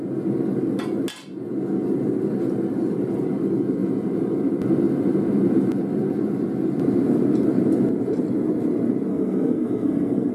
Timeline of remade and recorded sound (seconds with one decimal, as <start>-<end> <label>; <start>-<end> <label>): 0.0-9.1 recorded; 9.1-10.3 remade